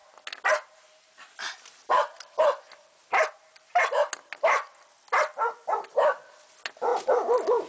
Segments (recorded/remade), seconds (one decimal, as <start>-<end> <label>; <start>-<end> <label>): 0.0-7.7 recorded